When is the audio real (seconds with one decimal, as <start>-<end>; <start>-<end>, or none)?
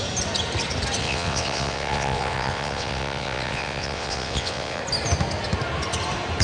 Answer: 0.0-1.0; 4.8-6.4